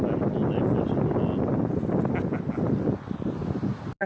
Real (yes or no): yes